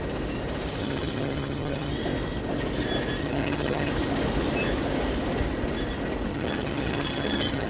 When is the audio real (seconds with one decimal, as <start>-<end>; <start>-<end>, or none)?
0.0-0.8; 1.9-3.2; 3.9-6.3